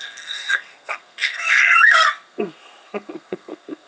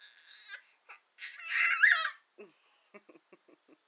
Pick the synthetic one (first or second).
first